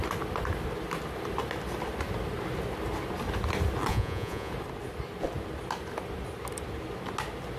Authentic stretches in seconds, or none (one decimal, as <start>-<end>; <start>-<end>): 0.0-3.9; 4.5-7.6